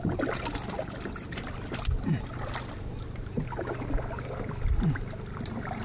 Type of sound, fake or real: real